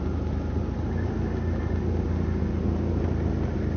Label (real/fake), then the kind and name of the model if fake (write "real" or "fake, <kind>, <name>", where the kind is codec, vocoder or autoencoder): real